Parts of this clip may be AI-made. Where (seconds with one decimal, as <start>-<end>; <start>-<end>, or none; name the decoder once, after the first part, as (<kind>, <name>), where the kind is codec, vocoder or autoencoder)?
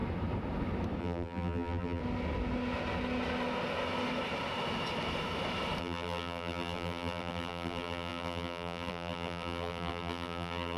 1.0-2.0 (vocoder, BigVGAN v2); 5.8-10.8